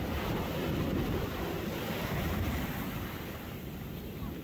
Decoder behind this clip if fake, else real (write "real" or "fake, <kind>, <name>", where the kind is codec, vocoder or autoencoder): real